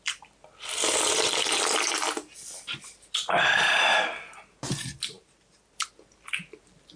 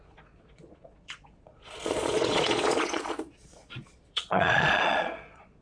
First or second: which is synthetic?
second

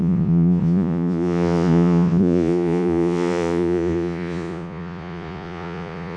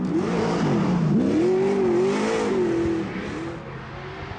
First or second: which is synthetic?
first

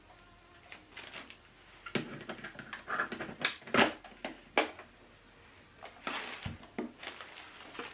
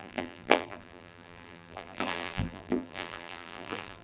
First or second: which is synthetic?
second